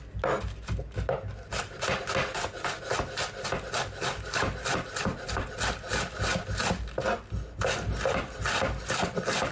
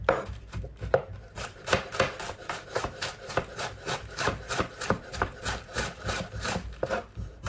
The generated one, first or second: second